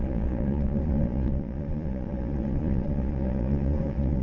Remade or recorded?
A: remade